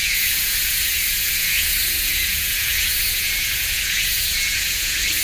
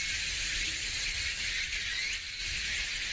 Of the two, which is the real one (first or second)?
second